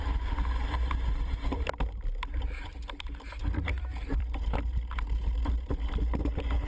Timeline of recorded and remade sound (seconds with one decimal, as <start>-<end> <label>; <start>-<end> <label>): 0.0-2.2 recorded; 2.2-4.4 remade; 4.4-6.7 recorded